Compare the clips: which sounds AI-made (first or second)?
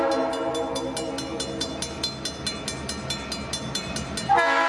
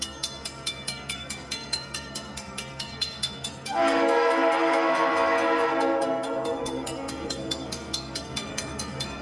second